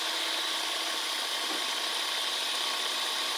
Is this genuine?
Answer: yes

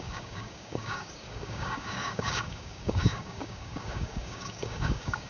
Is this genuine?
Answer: no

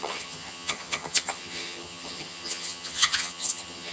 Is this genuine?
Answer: no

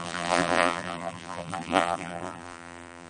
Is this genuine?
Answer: no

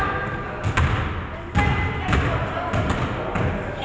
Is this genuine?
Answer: yes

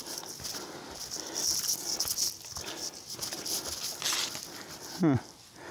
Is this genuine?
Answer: yes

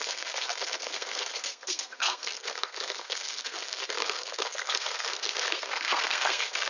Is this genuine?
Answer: no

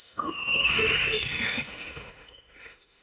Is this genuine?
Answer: no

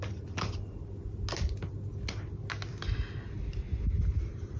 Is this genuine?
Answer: yes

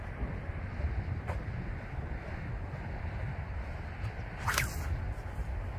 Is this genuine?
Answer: yes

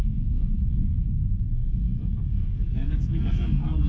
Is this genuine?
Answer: no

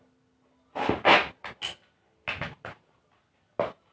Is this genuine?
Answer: yes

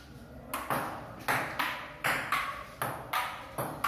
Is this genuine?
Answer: yes